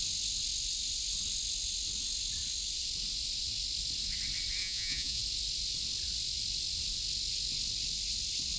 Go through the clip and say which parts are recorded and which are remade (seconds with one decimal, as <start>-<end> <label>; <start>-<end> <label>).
0.0-4.6 recorded; 4.6-5.2 remade; 5.2-8.6 recorded